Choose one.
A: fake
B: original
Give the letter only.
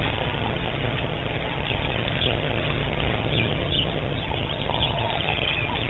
A